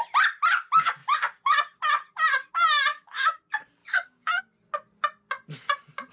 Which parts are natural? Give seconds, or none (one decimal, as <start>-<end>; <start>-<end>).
0.0-2.9; 3.4-3.8; 4.4-6.1